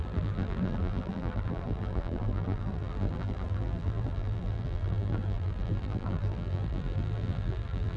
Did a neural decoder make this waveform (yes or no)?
yes